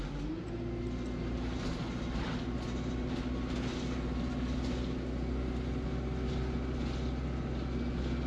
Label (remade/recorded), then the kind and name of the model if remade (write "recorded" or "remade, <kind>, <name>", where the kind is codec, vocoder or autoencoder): recorded